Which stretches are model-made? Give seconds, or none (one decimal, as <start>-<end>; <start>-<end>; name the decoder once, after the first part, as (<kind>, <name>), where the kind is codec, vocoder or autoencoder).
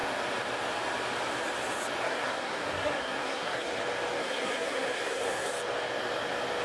2.0-3.8 (codec, SNAC); 4.2-5.5